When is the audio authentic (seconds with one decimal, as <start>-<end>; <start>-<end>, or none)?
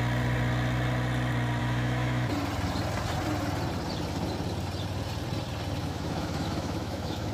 0.0-1.6; 2.3-5.8